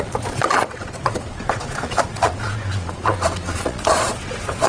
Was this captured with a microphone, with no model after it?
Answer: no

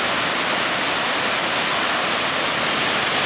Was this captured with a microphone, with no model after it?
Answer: yes